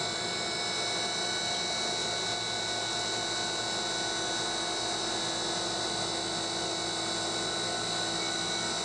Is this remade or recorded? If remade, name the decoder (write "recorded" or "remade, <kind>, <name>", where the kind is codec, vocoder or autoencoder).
recorded